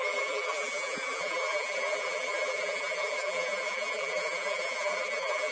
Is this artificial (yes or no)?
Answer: yes